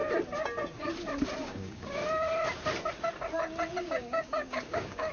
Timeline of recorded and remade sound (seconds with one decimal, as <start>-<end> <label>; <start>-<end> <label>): 0.0-1.4 recorded; 1.4-2.0 remade; 2.0-3.8 recorded; 3.8-5.1 remade